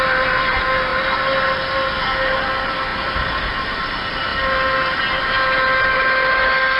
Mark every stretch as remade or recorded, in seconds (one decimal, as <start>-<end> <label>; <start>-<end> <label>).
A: 0.0-6.8 recorded